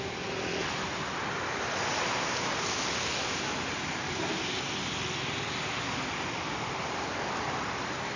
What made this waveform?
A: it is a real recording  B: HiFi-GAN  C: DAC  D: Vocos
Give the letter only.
A